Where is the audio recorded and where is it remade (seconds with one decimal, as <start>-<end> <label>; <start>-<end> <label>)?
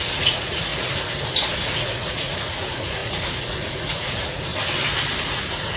0.0-0.7 remade; 0.7-1.5 recorded; 1.5-4.5 remade; 4.5-5.2 recorded; 5.2-5.8 remade